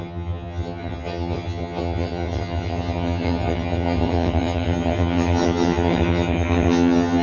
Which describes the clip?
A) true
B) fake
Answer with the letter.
B